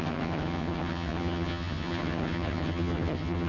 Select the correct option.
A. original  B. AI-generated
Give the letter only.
B